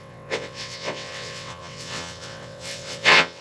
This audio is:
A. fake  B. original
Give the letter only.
A